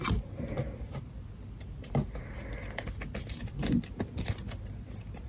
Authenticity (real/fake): real